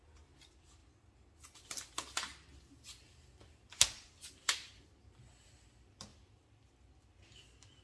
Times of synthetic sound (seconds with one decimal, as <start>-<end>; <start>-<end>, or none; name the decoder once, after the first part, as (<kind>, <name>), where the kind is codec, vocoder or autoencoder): 6.1-6.7 (vocoder, BigVGAN v2)